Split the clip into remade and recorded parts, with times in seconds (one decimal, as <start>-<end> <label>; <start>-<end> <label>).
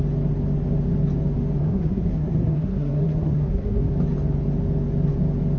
0.0-1.6 recorded; 1.6-3.9 remade; 3.9-5.6 recorded